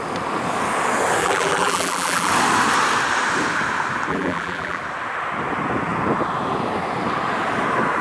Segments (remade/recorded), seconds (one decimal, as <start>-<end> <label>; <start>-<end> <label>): 0.0-1.2 recorded; 1.2-2.3 remade; 2.3-4.1 recorded; 4.1-4.8 remade; 4.8-8.0 recorded